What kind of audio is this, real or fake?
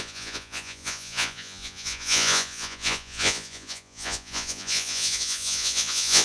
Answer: fake